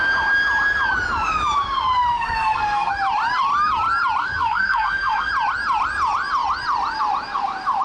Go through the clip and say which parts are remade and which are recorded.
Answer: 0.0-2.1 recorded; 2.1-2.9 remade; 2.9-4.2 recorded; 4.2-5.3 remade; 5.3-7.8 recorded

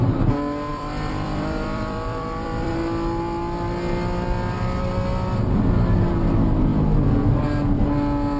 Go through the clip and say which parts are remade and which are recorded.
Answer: 0.0-0.7 recorded; 0.7-2.7 remade; 2.7-8.4 recorded

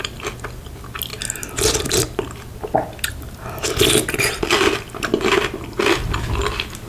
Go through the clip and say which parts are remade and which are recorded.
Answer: 0.0-6.9 recorded

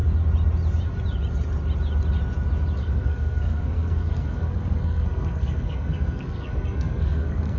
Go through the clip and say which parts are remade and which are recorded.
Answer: 0.0-2.8 recorded; 2.8-7.6 remade

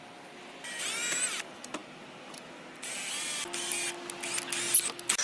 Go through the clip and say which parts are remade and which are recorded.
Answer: 0.0-5.2 recorded